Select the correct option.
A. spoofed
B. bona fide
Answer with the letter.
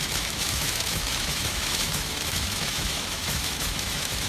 A